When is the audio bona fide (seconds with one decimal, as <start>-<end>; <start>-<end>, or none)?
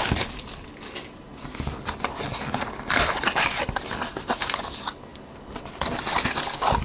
0.0-6.8